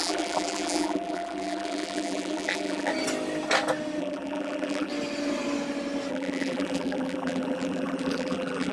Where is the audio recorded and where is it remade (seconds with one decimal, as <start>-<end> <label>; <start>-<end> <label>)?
0.0-2.9 remade; 2.9-4.0 recorded; 4.0-4.9 remade; 4.9-6.1 recorded; 6.1-8.7 remade